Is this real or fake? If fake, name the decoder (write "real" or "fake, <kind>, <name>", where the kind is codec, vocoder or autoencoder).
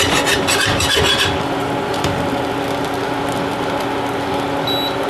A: real